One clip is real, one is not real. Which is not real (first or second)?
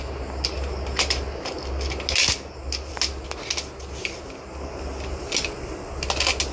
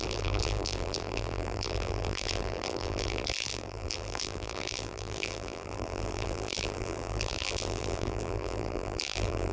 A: second